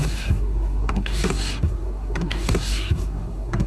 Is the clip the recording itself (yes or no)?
no